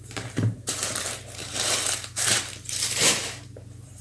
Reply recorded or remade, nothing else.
remade